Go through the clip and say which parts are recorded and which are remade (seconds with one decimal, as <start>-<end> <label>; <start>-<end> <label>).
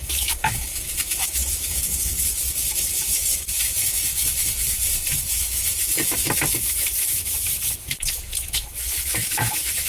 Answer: 0.0-9.9 remade